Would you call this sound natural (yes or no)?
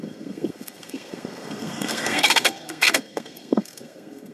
no